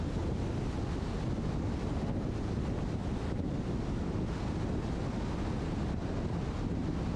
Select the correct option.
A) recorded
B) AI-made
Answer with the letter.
A